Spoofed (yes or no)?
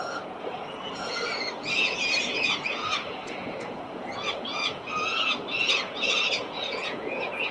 yes